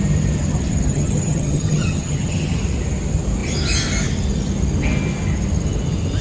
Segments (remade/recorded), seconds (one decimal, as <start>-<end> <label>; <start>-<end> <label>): 0.0-0.9 recorded; 0.9-2.6 remade; 2.6-6.2 recorded

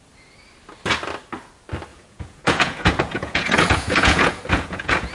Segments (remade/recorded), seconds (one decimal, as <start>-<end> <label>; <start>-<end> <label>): 0.0-1.9 recorded; 1.9-5.1 remade

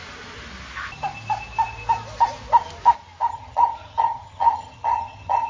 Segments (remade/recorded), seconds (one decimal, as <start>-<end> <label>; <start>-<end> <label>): 0.0-3.3 recorded; 3.3-5.5 remade

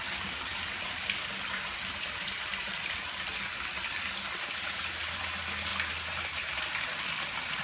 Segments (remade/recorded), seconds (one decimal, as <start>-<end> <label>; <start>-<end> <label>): 0.0-5.7 recorded; 5.7-6.6 remade; 6.6-7.6 recorded

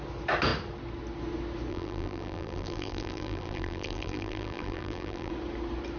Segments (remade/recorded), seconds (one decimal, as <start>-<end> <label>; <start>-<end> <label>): 0.0-1.7 recorded; 1.7-5.3 remade; 5.3-6.0 recorded

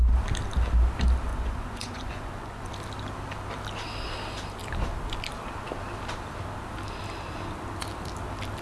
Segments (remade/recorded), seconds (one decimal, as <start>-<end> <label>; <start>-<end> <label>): 0.0-1.3 recorded; 1.3-2.7 remade; 2.7-8.6 recorded

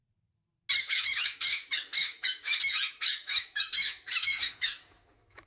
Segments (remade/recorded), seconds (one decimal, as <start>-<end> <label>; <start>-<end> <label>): 0.0-0.8 recorded; 0.8-5.5 remade

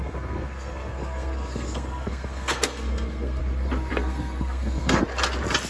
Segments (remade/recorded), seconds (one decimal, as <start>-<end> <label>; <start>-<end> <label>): 0.0-3.4 remade; 3.4-3.9 recorded; 3.9-5.0 remade; 5.0-5.7 recorded